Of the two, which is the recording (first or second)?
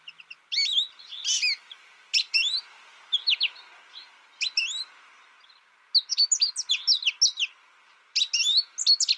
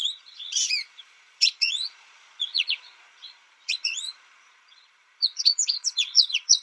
first